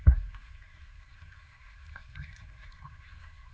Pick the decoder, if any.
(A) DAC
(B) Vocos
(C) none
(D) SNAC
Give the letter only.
D